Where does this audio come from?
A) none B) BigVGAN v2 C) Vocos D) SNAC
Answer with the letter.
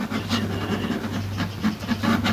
A